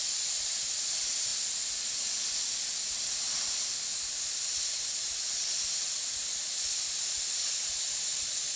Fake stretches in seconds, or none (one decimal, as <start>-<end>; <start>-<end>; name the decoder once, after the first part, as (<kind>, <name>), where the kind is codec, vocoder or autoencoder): none